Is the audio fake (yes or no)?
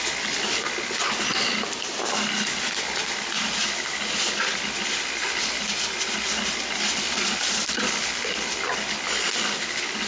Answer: no